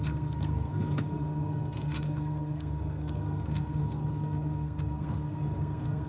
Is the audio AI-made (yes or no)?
yes